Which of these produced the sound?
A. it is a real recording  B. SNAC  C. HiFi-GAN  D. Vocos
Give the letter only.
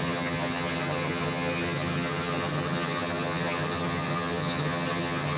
C